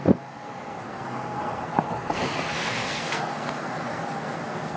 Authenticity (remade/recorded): remade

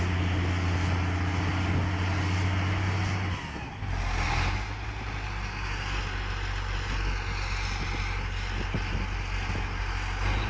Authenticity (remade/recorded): recorded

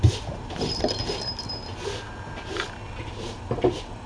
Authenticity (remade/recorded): recorded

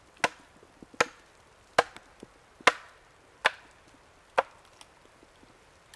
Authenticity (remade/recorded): recorded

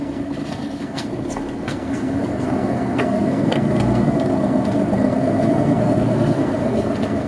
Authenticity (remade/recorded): remade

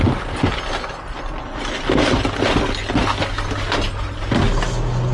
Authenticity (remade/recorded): recorded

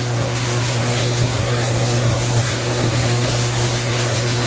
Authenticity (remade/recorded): remade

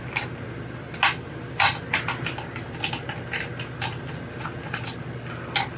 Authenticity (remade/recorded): recorded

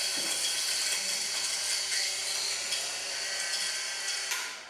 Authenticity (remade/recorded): recorded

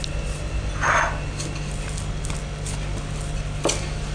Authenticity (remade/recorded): recorded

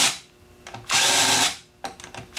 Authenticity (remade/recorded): recorded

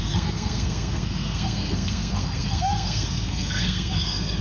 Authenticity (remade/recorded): remade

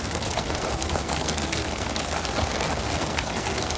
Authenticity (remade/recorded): remade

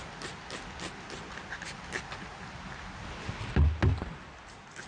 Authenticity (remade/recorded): recorded